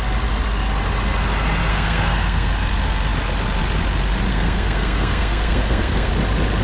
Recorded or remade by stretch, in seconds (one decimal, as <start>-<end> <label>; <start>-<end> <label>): 0.0-1.7 recorded; 1.7-2.5 remade; 2.5-4.3 recorded; 4.3-6.1 remade; 6.1-6.6 recorded